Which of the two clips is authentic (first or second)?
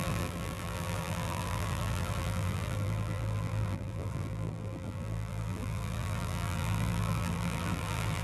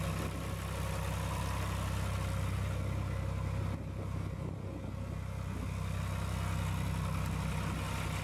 second